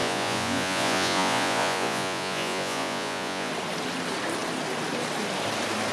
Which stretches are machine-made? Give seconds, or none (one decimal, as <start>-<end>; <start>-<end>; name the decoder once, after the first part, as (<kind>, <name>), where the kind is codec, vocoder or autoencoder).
0.0-3.5 (vocoder, Vocos)